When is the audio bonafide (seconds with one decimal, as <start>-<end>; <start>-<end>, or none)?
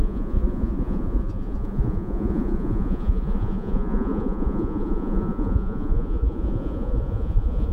none